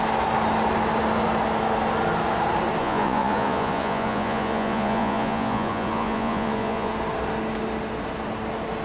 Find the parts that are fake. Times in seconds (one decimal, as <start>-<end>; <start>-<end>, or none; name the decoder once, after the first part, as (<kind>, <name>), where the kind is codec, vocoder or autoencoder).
2.8-6.9 (vocoder, Vocos)